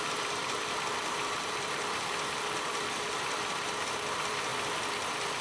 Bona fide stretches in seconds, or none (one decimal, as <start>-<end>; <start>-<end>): none

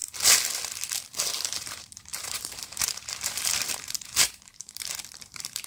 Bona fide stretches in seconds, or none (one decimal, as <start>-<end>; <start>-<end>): 0.0-1.2

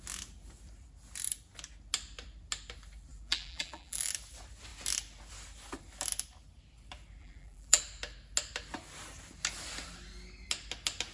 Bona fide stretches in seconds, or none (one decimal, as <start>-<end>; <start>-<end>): 0.0-3.1; 4.1-7.2; 7.8-11.1